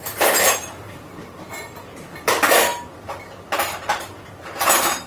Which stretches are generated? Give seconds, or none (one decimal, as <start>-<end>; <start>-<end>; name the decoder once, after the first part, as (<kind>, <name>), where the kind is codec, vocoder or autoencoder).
0.0-1.6 (vocoder, BigVGAN v2)